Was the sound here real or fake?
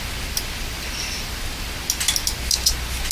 real